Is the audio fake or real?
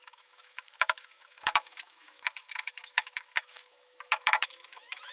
fake